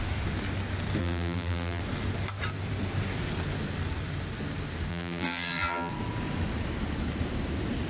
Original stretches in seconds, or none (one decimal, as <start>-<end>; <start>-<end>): 0.0-1.0; 1.8-4.9; 5.9-7.9